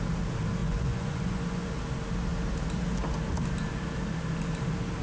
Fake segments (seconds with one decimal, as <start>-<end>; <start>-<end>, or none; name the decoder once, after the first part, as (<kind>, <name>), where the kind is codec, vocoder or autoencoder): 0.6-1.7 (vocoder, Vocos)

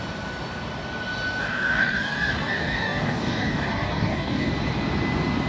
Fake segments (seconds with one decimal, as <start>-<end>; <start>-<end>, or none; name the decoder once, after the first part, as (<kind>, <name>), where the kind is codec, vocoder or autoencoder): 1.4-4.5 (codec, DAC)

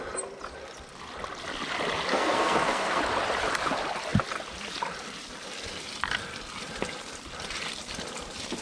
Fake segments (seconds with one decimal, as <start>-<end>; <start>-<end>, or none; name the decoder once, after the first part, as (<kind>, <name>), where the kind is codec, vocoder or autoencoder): 2.1-3.0 (codec, SNAC)

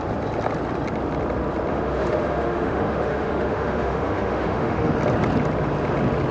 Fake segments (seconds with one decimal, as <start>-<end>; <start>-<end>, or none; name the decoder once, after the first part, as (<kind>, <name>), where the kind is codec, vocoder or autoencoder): 1.7-4.9 (autoencoder, DAC-VAE)